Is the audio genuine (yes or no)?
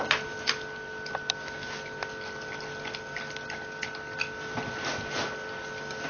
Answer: yes